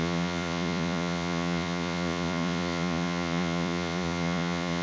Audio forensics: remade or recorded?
remade